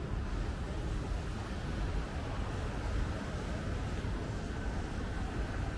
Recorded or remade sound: recorded